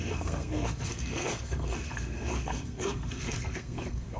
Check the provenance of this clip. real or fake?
fake